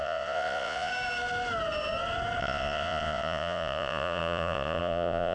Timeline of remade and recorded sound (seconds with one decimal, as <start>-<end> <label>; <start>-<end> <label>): 0.0-0.9 remade; 0.9-2.4 recorded; 2.4-5.3 remade